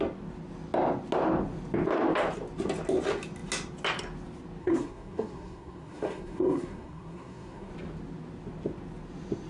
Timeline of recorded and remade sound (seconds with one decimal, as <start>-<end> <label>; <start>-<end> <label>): 0.0-4.6 recorded; 4.6-7.7 remade; 7.7-9.5 recorded